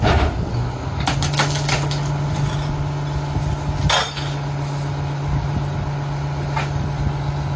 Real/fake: real